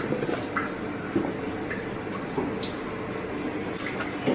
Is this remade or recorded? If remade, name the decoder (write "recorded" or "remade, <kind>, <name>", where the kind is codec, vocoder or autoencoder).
recorded